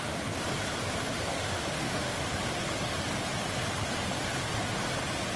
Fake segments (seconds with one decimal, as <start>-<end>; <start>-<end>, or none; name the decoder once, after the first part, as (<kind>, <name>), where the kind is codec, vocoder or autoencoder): 1.4-2.2 (autoencoder, DAC-VAE)